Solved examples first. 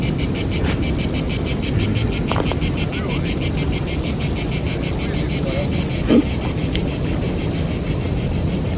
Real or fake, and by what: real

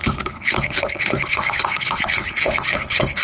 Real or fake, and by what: fake, codec, HILCodec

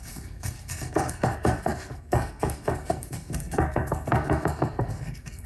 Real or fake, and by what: fake, codec, SNAC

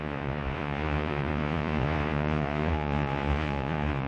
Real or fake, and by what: fake, vocoder, Vocos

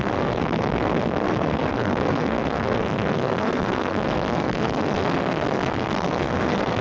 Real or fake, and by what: fake, codec, SNAC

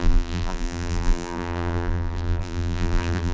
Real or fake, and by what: fake, vocoder, BigVGAN v2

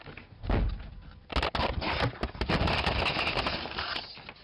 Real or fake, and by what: real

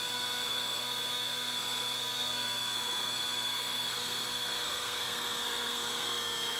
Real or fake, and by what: fake, codec, SNAC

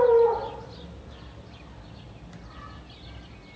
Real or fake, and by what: real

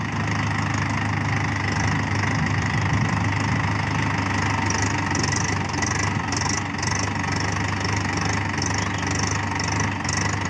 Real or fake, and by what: real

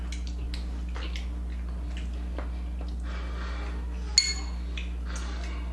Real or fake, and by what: real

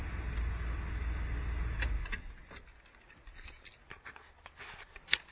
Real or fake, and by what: real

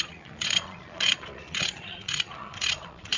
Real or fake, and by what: fake, vocoder, Vocos